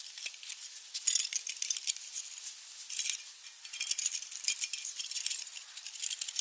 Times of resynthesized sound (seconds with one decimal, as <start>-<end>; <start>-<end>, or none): 4.7-6.0